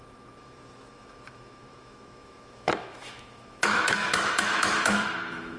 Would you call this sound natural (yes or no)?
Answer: no